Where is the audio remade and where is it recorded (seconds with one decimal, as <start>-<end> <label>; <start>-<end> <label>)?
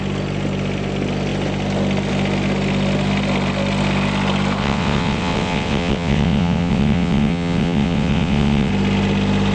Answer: 0.0-4.6 recorded; 4.6-8.7 remade; 8.7-9.5 recorded